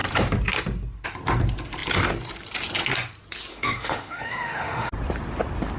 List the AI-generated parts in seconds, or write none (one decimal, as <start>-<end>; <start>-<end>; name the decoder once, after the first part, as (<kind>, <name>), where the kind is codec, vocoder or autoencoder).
3.5-4.9 (autoencoder, DAC-VAE)

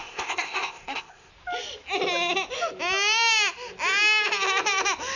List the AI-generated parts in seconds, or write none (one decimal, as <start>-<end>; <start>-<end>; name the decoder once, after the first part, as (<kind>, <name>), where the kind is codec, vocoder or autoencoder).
0.0-1.3 (codec, ZipCodec)

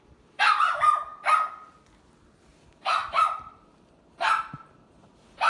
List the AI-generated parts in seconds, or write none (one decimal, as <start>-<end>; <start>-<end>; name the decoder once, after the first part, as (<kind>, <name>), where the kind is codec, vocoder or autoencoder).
0.0-1.1 (vocoder, BigVGAN v2); 2.5-5.5

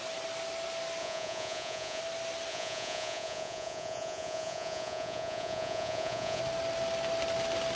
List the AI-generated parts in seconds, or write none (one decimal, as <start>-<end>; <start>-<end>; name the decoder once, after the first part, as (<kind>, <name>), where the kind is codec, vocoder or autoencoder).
1.0-2.0 (vocoder, Vocos); 2.5-6.4

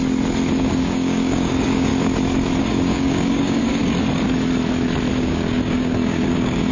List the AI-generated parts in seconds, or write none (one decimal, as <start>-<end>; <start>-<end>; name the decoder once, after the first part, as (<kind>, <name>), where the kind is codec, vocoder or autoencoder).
0.6-1.9 (codec, DAC); 2.6-3.8; 5.1-6.7

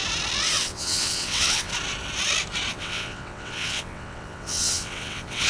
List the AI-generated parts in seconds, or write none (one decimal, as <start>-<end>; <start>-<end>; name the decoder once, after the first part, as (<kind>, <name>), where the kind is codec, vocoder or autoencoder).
0.6-1.7 (vocoder, WaveNeXt); 2.7-5.5

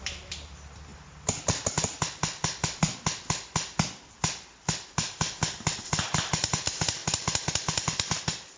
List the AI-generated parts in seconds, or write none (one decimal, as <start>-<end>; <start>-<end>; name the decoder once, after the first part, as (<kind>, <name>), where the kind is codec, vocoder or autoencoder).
0.0-0.9 (vocoder, BigVGAN v2); 5.2-7.0; 7.5-8.6